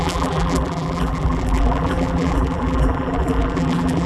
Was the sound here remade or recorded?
remade